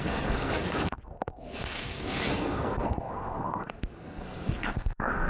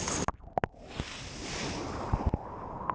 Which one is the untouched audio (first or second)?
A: second